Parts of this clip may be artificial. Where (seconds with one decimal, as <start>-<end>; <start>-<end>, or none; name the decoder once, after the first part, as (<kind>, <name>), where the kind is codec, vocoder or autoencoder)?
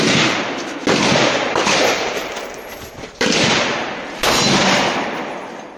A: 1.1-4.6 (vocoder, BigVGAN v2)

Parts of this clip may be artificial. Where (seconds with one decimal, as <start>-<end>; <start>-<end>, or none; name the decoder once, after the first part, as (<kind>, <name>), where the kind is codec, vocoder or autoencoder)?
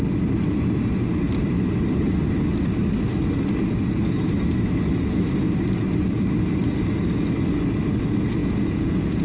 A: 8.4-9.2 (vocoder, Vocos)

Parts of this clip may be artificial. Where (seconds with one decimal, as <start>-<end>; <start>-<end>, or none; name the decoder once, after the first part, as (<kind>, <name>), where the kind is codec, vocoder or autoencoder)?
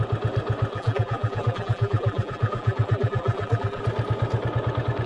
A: 0.7-3.8 (vocoder, BigVGAN v2)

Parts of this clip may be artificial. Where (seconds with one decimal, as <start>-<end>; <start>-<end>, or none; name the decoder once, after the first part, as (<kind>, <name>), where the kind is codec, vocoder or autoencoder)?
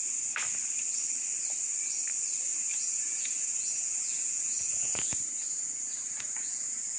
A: 2.5-7.0 (vocoder, Vocos)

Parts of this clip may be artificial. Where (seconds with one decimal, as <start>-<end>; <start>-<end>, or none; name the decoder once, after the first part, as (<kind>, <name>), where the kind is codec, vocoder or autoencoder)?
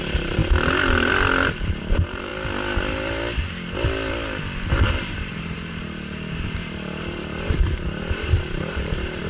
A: 0.0-0.4 (vocoder, BigVGAN v2); 1.8-2.3; 4.7-9.3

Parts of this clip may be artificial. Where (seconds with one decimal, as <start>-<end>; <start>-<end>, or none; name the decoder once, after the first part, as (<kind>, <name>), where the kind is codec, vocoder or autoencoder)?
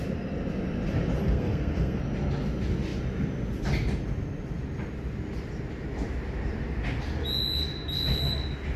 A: 1.2-2.0 (codec, SNAC)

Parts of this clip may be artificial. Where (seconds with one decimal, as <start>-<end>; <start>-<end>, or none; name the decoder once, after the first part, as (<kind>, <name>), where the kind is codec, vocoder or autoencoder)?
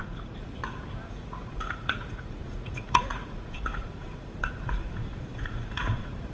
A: 0.0-0.6 (vocoder, Vocos); 1.1-6.3